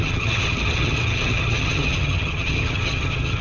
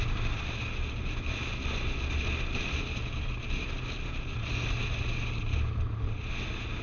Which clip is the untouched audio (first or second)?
second